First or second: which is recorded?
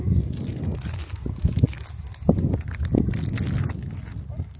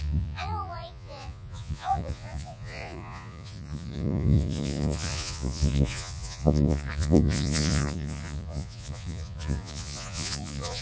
first